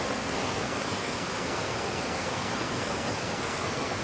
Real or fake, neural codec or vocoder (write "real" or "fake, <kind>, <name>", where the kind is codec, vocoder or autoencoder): fake, codec, SNAC